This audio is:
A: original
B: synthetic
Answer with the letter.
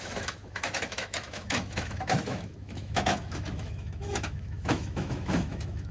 B